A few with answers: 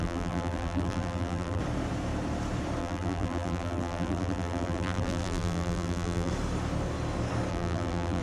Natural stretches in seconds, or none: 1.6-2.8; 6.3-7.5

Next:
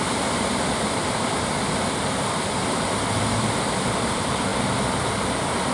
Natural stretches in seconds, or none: none